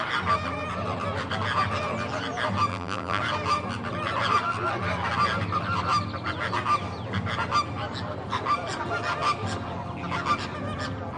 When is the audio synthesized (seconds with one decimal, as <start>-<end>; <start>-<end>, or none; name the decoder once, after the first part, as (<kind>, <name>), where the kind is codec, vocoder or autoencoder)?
2.7-3.2 (vocoder, BigVGAN v2)